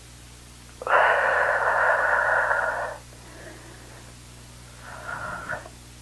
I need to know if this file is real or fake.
real